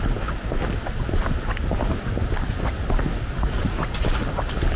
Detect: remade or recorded recorded